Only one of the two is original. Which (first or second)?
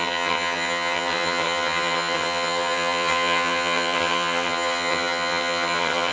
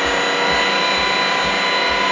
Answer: second